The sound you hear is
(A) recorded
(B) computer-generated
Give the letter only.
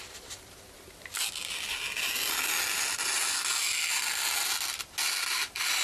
A